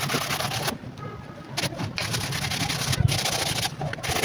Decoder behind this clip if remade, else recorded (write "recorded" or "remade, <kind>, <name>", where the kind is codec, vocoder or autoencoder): recorded